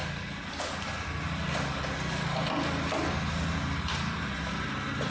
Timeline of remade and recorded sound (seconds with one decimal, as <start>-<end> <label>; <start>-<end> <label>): 0.0-5.1 recorded